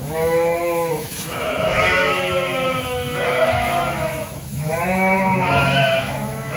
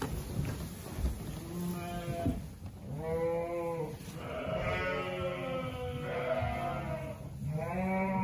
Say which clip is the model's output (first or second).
first